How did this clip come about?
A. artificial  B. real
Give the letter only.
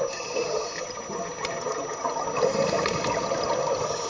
B